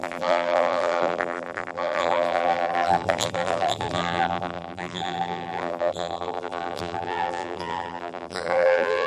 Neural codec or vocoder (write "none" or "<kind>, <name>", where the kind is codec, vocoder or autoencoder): vocoder, BigVGAN v2